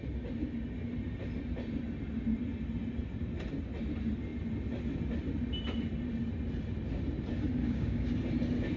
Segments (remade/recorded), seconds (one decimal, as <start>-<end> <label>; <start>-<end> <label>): 0.0-7.6 recorded; 7.6-8.1 remade; 8.1-8.8 recorded